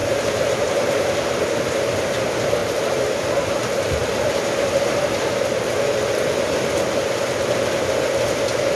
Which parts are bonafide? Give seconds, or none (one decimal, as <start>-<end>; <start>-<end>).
0.8-2.6; 5.3-8.8